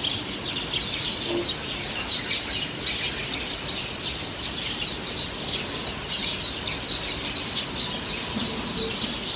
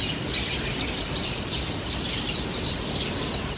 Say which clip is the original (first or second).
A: first